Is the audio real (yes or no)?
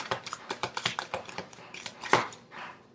no